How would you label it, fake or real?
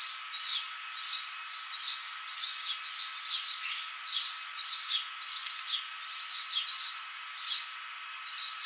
real